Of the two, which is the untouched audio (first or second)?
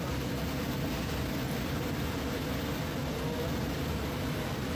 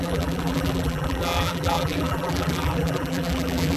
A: first